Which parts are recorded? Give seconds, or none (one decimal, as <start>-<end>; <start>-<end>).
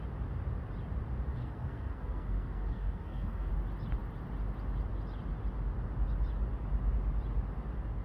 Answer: 0.0-1.3; 3.5-8.0